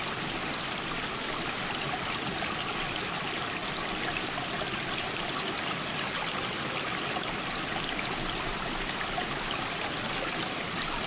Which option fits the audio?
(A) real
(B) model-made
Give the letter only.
A